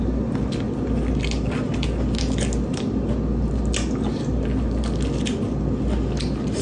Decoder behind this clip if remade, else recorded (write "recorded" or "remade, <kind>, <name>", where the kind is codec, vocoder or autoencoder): recorded